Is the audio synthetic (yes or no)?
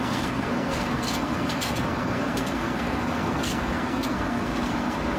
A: yes